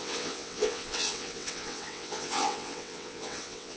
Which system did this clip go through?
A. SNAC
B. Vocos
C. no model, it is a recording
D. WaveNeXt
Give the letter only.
D